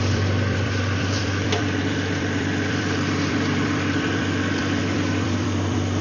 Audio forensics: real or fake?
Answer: fake